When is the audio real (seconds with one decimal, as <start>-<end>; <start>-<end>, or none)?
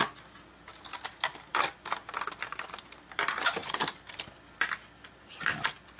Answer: 0.0-6.0